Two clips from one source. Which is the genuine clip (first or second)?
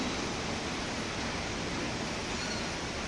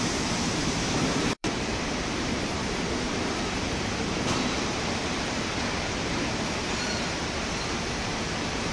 first